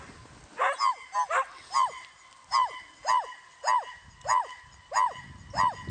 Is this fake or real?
real